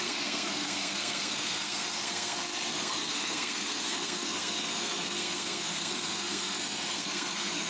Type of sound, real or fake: fake